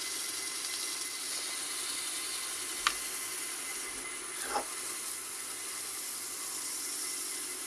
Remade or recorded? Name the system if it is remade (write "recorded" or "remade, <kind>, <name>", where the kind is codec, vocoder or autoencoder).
recorded